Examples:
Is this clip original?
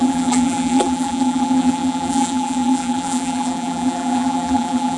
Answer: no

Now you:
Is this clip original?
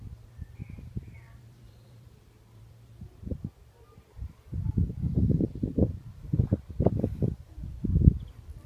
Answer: no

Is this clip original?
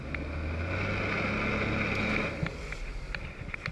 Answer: yes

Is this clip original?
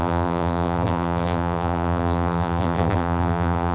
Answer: no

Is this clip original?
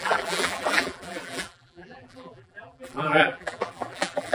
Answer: no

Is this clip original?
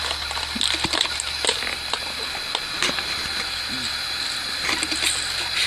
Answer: yes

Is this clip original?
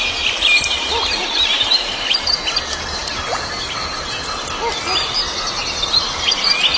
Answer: yes